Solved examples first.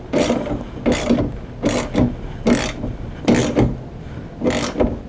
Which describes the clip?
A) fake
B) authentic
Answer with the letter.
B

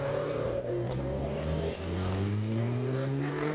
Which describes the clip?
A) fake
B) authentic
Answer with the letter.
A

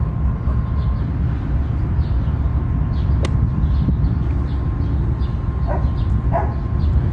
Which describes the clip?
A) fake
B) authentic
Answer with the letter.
B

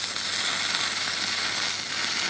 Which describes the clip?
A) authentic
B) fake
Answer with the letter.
A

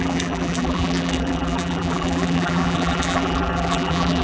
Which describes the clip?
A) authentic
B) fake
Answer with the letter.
B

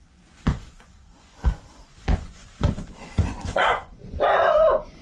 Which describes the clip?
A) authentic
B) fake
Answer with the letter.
B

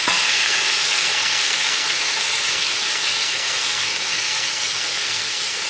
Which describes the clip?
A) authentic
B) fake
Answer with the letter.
B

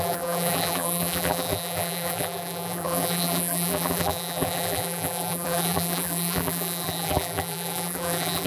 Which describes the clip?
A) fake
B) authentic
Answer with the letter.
A